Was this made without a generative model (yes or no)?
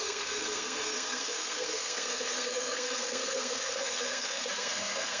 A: no